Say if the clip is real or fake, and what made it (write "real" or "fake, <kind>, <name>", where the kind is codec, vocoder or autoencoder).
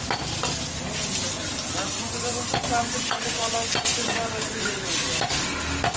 real